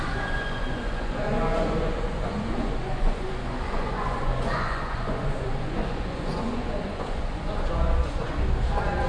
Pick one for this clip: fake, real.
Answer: fake